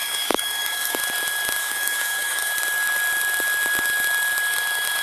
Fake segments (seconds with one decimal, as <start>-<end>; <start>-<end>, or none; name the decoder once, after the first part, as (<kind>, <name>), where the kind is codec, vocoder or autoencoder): 0.0-1.0 (codec, DAC); 1.6-2.5